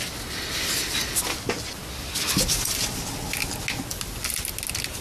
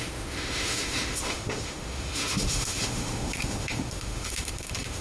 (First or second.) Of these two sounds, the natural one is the first